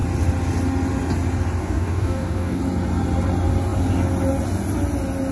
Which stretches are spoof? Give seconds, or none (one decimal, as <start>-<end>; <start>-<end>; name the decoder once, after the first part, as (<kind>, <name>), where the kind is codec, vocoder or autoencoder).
1.6-2.6 (codec, DAC)